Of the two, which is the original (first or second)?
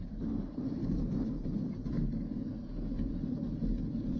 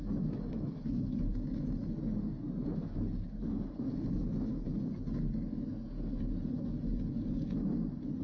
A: second